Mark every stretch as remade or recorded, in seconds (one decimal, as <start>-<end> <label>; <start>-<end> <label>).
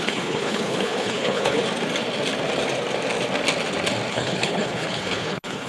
0.0-1.6 remade; 1.6-4.1 recorded; 4.1-5.7 remade